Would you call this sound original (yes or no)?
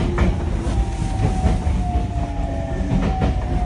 yes